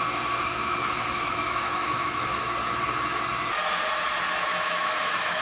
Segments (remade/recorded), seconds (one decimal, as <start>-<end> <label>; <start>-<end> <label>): 0.0-0.4 recorded; 0.4-2.4 remade; 2.4-4.5 recorded; 4.5-5.4 remade